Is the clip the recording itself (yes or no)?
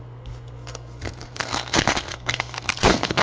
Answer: no